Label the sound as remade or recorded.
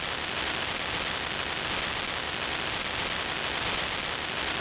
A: remade